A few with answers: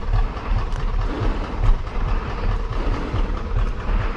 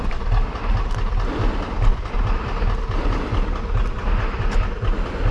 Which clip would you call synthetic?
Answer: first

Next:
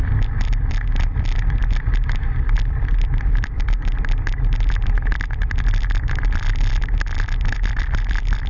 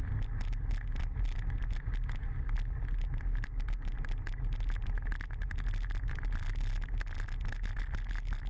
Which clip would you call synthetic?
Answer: first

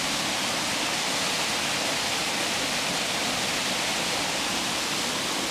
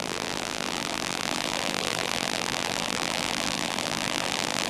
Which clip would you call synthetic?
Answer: second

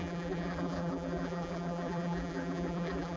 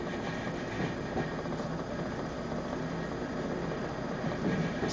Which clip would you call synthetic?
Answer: first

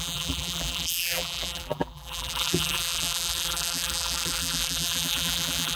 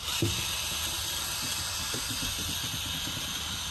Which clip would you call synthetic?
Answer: first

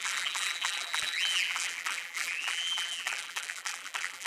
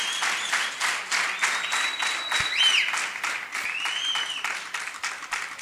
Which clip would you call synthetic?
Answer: first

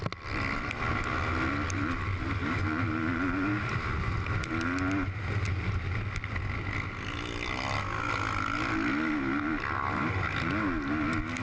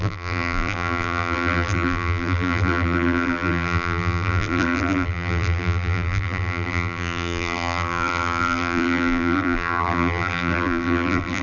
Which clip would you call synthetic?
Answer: second